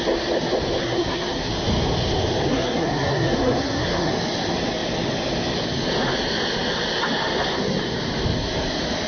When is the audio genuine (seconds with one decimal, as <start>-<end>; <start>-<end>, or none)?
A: 0.0-0.8; 1.5-2.5; 4.1-9.1